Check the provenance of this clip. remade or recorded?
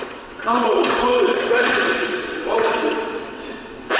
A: remade